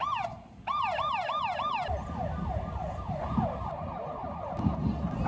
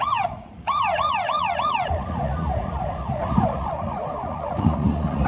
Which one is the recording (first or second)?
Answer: first